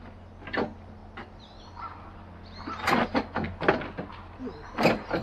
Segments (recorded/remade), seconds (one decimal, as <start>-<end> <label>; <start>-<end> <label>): 0.0-5.2 recorded